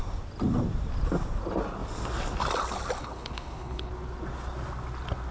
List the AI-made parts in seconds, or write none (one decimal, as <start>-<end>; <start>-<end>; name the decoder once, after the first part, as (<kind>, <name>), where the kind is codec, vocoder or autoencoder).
3.0-3.9 (codec, HILCodec)